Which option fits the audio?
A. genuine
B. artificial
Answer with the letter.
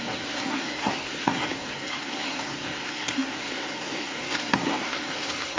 B